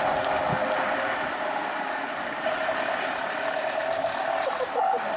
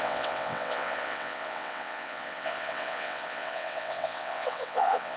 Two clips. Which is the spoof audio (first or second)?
second